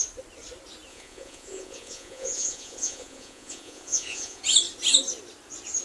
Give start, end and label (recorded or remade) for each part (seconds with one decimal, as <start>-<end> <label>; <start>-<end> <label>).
0.0-0.9 recorded; 0.9-4.4 remade; 4.4-5.8 recorded

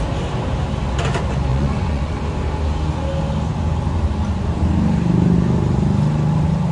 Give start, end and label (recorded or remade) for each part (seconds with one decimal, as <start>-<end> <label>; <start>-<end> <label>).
0.0-1.5 recorded; 1.5-2.1 remade; 2.1-6.7 recorded

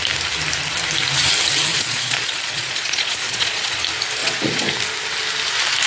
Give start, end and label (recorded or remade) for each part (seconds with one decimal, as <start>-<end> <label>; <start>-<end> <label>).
0.0-1.7 recorded; 1.7-3.8 remade; 3.8-4.2 recorded; 4.2-4.7 remade; 4.7-5.9 recorded

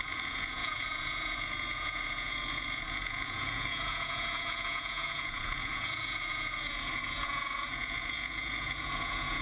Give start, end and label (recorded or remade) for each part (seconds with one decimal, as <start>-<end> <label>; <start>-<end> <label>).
0.0-9.4 remade

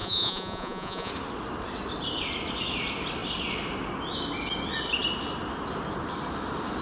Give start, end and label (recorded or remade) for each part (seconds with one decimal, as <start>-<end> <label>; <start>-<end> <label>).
0.0-1.1 remade; 1.1-6.8 recorded

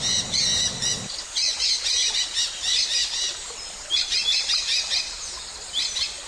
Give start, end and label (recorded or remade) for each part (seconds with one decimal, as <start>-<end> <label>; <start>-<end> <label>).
0.0-6.3 recorded